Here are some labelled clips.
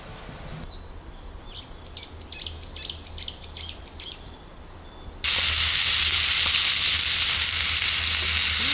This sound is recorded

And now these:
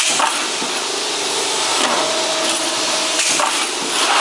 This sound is recorded